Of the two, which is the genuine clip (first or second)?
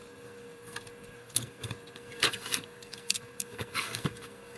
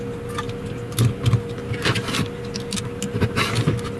second